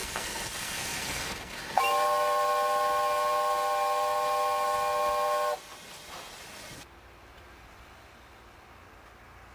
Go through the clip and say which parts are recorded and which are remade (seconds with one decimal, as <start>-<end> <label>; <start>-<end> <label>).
0.0-1.8 remade; 1.8-9.5 recorded